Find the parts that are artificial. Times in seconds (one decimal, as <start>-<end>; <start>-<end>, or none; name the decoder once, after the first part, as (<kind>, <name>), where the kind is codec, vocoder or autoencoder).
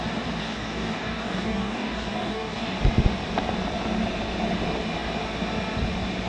0.4-2.8 (codec, DAC)